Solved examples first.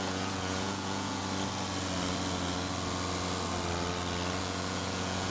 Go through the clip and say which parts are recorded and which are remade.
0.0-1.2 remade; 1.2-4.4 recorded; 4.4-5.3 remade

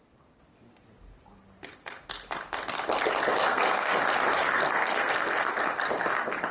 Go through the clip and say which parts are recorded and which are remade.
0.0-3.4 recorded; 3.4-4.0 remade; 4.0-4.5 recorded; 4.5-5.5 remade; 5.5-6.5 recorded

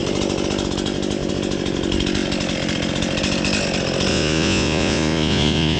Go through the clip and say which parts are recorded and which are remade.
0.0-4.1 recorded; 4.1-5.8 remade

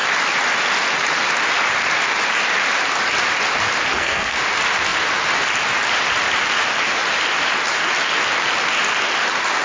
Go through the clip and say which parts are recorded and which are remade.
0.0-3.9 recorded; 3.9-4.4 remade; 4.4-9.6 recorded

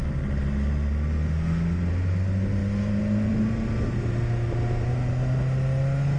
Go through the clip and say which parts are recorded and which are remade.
0.0-6.2 recorded

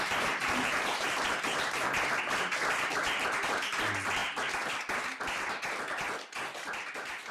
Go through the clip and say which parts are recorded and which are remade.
0.0-0.4 recorded; 0.4-1.9 remade; 1.9-3.0 recorded; 3.0-3.8 remade; 3.8-7.3 recorded